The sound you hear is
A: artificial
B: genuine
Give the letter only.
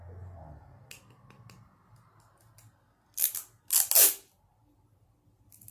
B